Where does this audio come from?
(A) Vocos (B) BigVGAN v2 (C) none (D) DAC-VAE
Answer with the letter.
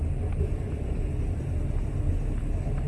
C